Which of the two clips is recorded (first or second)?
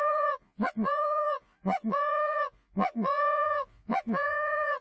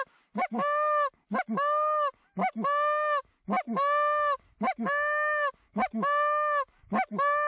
second